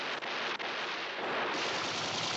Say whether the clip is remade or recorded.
recorded